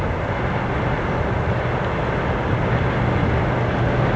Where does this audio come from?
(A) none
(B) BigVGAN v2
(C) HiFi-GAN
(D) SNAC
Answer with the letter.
A